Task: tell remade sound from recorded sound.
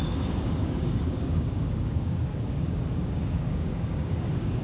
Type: remade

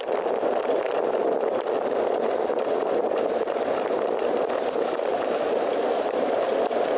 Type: recorded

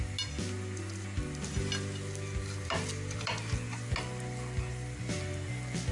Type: recorded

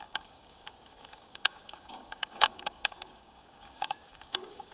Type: remade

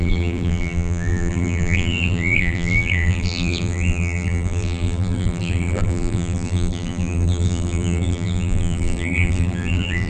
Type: remade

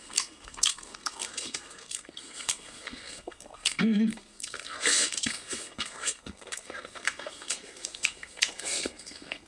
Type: remade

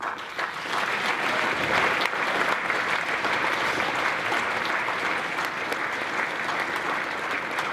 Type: recorded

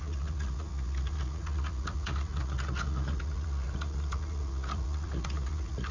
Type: remade